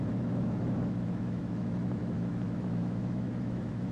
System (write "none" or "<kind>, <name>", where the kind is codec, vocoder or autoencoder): autoencoder, DAC-VAE